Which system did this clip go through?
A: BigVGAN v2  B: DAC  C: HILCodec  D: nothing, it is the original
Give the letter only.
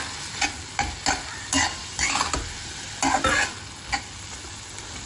D